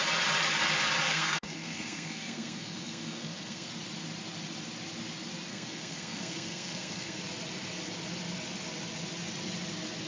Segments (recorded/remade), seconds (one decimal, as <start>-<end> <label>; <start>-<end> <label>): 0.0-1.1 recorded; 1.1-3.7 remade; 3.7-5.5 recorded; 5.5-7.2 remade; 7.2-10.1 recorded